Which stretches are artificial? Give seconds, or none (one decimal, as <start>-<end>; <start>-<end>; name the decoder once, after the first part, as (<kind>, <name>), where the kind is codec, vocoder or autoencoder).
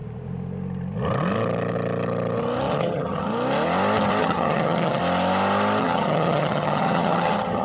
2.8-3.3 (vocoder, HiFi-GAN); 4.2-5.0; 5.8-7.6